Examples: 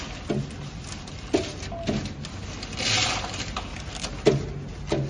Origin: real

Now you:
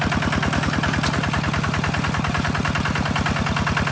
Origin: real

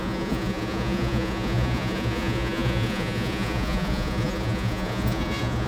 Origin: fake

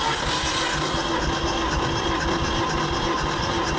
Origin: real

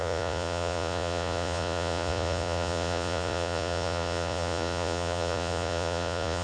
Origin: fake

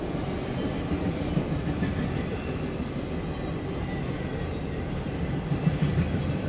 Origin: real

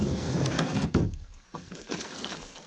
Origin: fake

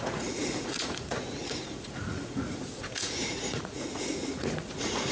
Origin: fake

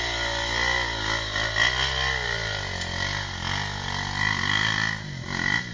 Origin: real